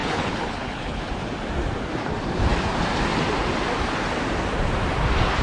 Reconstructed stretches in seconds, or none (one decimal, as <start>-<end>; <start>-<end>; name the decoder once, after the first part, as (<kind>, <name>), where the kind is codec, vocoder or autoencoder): 0.0-1.1 (codec, HILCodec)